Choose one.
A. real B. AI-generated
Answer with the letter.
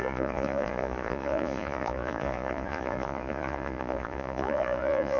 B